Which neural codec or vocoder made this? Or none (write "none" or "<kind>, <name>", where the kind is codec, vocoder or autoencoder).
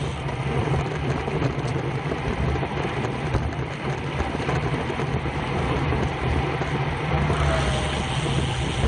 none